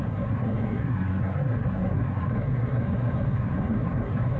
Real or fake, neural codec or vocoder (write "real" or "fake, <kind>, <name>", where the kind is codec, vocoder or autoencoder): fake, codec, SNAC